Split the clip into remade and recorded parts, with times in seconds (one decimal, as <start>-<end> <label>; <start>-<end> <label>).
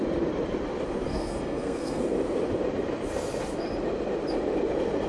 0.0-1.1 recorded; 1.1-2.0 remade; 2.0-5.1 recorded